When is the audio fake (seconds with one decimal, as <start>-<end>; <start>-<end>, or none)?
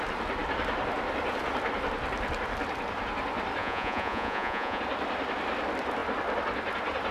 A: 3.6-4.8